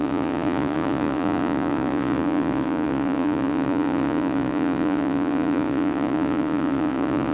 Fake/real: fake